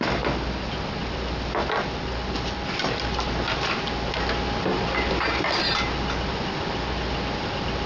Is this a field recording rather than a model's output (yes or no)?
yes